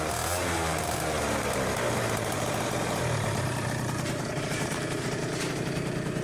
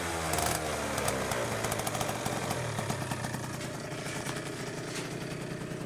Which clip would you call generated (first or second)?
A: first